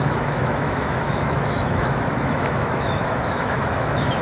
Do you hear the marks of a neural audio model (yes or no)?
yes